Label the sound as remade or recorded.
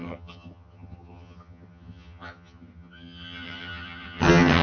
remade